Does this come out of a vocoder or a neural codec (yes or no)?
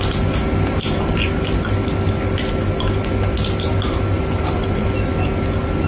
no